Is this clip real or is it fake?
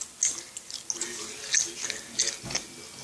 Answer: real